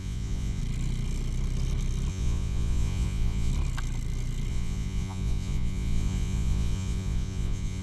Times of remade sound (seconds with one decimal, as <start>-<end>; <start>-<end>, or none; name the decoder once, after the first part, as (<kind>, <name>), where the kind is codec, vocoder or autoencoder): 0.0-0.6 (vocoder, Vocos); 2.1-3.5; 4.5-7.8